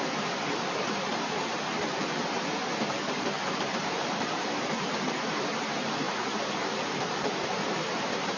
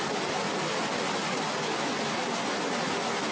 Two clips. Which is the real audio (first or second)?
second